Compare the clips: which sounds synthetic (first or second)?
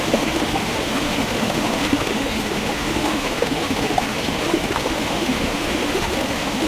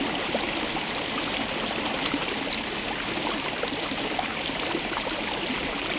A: first